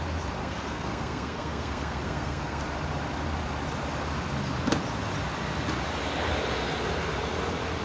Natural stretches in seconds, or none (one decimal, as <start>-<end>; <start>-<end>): 0.0-0.4; 2.6-7.8